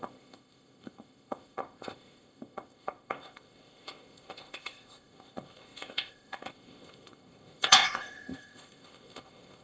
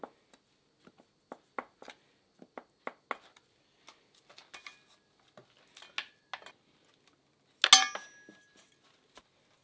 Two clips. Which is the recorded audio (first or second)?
second